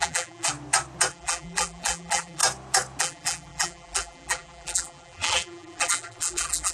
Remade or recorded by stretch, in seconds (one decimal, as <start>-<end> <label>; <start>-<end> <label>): 0.0-0.5 remade; 0.5-1.1 recorded; 1.1-2.4 remade; 2.4-3.0 recorded; 3.0-6.7 remade